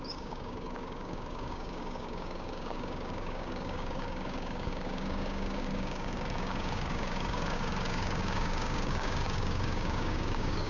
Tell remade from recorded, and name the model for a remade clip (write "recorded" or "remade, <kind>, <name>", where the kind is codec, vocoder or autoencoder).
remade, codec, DAC